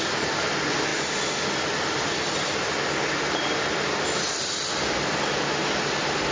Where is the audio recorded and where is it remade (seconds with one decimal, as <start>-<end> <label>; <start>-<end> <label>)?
0.0-6.3 recorded